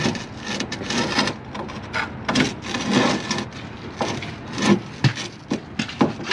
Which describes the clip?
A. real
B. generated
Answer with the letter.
A